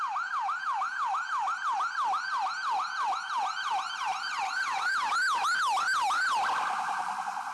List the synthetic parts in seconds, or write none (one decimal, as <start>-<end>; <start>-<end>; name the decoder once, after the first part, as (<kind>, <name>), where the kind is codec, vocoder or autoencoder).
4.1-5.1 (vocoder, BigVGAN v2)